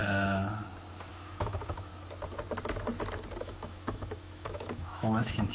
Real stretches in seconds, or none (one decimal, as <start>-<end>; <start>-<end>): 0.0-1.1; 1.9-3.4